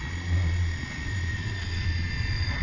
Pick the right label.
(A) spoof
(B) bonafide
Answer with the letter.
A